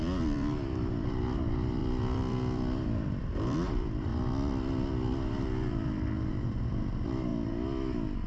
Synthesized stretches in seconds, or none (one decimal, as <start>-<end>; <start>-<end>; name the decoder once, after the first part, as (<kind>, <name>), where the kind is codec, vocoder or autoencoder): 0.0-4.1 (vocoder, BigVGAN v2); 6.3-7.3